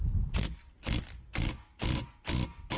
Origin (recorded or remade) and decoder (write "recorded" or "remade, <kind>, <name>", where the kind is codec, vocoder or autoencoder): recorded